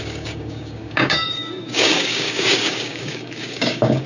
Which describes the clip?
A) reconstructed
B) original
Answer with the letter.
A